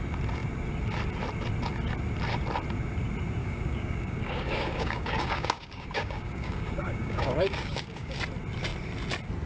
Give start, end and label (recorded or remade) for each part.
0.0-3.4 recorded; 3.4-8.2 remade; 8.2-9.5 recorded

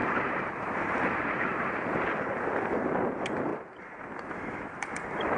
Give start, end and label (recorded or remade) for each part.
0.0-2.4 remade; 2.4-3.5 recorded; 3.5-4.0 remade; 4.0-5.4 recorded

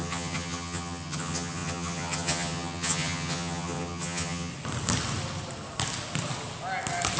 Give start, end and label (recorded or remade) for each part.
0.0-4.5 remade; 4.5-7.2 recorded